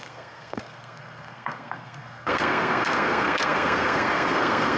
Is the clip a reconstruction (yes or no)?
yes